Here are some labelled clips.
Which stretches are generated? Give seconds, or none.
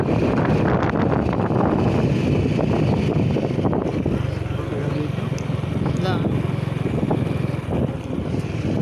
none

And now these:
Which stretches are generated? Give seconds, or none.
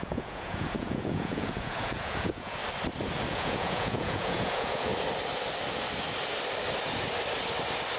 0.0-2.6; 3.3-4.9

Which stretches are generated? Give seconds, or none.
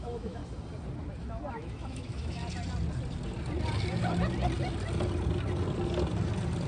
0.0-0.4; 1.5-2.4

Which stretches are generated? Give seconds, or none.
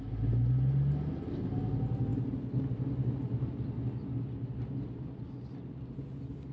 none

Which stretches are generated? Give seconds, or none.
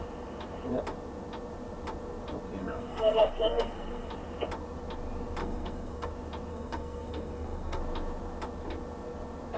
2.6-4.1; 5.4-6.1; 6.5-7.8